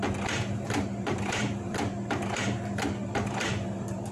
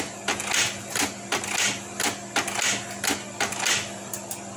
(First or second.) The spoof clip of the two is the first